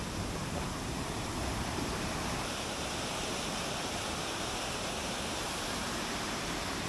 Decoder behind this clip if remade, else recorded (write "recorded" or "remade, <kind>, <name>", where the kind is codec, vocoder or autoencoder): remade, vocoder, BigVGAN v2